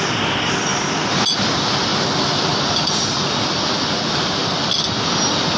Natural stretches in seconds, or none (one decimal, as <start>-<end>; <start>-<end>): 0.0-5.6